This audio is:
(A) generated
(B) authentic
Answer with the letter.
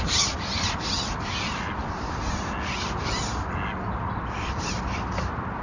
B